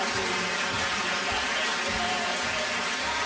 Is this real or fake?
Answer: real